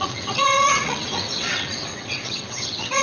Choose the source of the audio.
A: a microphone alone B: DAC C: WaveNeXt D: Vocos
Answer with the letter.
C